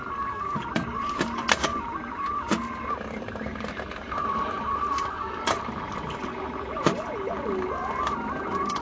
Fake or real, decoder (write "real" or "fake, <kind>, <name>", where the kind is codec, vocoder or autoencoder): real